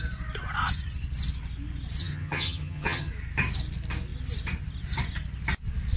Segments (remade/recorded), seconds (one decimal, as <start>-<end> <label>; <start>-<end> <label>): 0.0-2.0 recorded; 2.0-3.1 remade; 3.1-6.0 recorded